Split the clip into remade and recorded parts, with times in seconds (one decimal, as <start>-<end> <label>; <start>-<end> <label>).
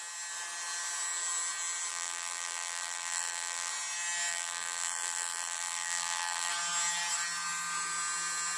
0.0-1.9 recorded; 1.9-3.7 remade; 3.7-4.3 recorded; 4.3-6.5 remade; 6.5-8.6 recorded